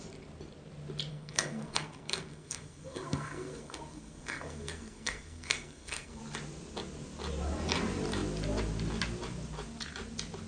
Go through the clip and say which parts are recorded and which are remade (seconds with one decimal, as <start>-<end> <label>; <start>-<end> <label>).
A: 0.0-1.1 recorded; 1.1-6.2 remade; 6.2-10.5 recorded